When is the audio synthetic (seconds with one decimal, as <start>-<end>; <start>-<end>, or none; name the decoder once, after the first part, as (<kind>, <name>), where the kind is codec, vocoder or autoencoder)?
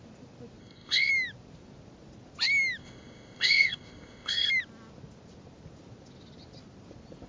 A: 0.6-1.1 (codec, ZipCodec); 2.8-4.5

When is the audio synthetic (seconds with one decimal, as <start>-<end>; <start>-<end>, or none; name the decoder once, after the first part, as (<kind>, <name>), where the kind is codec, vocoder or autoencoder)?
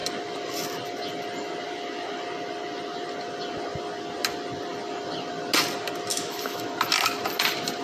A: 6.1-6.7 (autoencoder, DAC-VAE)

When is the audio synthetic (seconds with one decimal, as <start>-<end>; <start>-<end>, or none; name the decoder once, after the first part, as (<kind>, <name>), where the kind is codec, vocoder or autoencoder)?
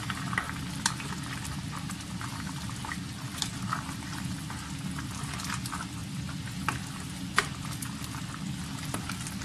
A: none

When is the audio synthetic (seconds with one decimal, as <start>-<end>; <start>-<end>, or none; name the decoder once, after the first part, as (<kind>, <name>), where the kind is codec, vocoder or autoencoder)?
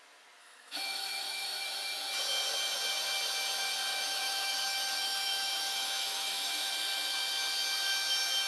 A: 0.4-1.6 (autoencoder, DAC-VAE); 3.9-6.7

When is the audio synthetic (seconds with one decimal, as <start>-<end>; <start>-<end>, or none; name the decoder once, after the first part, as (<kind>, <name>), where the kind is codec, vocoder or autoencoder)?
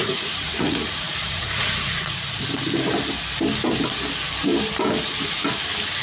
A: 0.0-2.4 (vocoder, Vocos)